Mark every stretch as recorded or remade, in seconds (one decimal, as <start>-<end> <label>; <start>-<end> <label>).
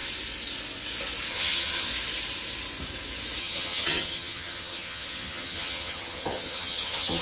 0.0-1.3 recorded; 1.3-1.9 remade; 1.9-3.4 recorded; 3.4-7.2 remade